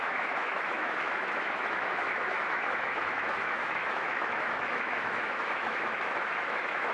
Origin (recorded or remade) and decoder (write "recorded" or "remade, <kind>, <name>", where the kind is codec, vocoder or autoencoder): remade, autoencoder, DAC-VAE